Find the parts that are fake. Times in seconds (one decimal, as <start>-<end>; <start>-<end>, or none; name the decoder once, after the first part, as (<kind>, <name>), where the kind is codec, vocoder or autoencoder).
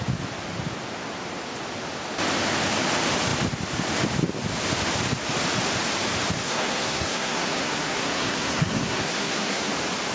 6.4-9.7 (codec, SNAC)